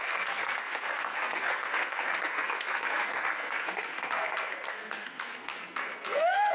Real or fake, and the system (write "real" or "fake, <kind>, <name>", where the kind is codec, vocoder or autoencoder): fake, codec, SNAC